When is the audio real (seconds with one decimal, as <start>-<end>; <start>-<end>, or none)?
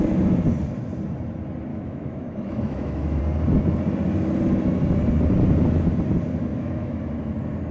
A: 0.0-1.7; 3.2-6.5; 7.0-7.7